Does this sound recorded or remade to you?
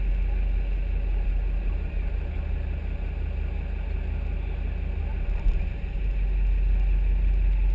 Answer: recorded